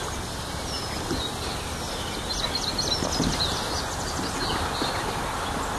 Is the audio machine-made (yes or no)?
no